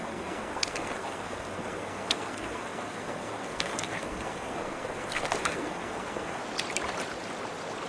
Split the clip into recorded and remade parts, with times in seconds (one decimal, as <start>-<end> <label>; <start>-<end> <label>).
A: 0.0-6.4 remade; 6.4-7.9 recorded